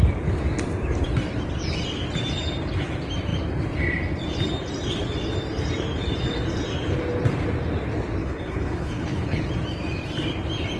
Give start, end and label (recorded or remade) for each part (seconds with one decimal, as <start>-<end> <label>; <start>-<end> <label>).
0.0-8.2 recorded; 8.2-9.4 remade; 9.4-10.8 recorded